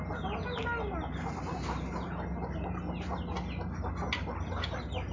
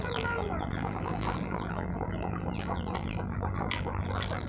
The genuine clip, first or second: first